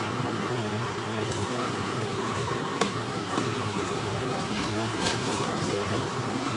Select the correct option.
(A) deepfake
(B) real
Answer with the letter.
A